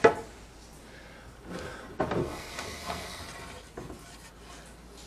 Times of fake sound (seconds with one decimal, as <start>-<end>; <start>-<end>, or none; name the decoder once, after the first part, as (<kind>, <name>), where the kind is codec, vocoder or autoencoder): 2.2-3.2 (codec, SNAC)